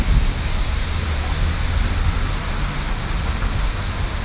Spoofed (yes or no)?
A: no